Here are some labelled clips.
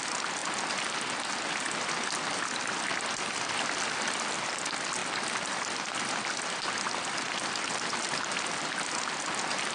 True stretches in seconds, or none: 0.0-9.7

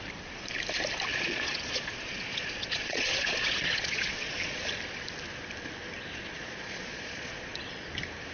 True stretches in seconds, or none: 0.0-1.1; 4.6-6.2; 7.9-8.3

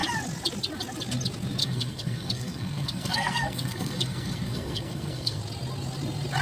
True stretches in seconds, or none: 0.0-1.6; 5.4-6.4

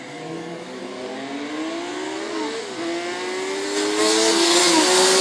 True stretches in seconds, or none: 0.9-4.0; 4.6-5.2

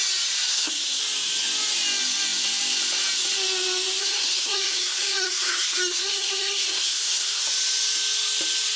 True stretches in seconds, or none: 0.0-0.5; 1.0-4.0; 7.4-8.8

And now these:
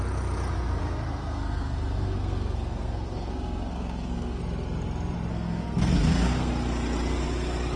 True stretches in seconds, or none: 0.0-0.8; 4.4-5.3; 6.5-7.8